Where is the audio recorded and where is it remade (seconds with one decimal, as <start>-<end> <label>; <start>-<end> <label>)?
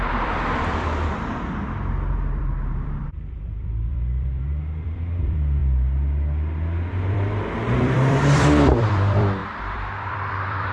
0.0-5.6 remade; 5.6-6.9 recorded; 6.9-10.7 remade